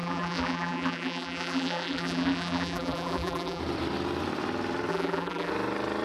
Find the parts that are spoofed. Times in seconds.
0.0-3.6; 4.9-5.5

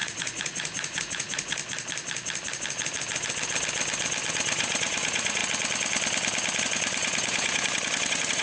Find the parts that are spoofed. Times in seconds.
0.0-1.6; 4.3-5.4; 6.6-8.4

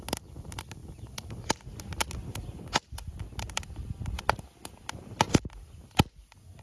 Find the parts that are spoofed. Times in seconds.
none

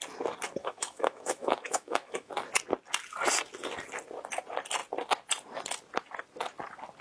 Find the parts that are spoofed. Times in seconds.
0.6-2.3

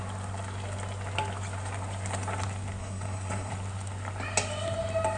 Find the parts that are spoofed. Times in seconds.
2.8-3.5